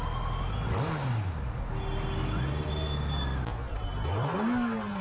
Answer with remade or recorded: recorded